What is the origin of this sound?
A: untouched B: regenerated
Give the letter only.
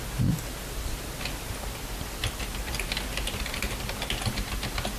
A